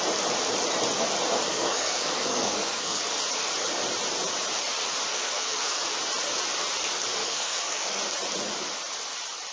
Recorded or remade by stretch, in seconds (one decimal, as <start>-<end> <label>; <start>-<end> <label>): 0.0-1.5 recorded; 1.5-3.0 remade; 3.0-5.1 recorded; 5.1-5.8 remade; 5.8-7.2 recorded; 7.2-8.0 remade; 8.0-9.5 recorded

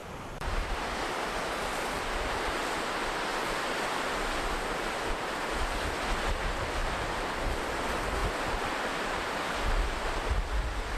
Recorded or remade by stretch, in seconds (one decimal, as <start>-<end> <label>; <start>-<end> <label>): 0.0-3.3 recorded; 3.3-5.1 remade; 5.1-6.8 recorded; 6.8-7.6 remade; 7.6-11.0 recorded

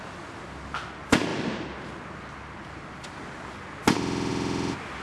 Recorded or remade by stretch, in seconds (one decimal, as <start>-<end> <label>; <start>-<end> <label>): 0.0-5.0 recorded

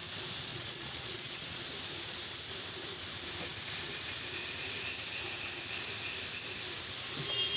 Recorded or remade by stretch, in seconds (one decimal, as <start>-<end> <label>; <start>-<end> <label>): 0.0-0.5 recorded; 0.5-1.6 remade; 1.6-7.6 recorded